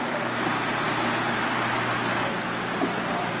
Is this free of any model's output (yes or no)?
yes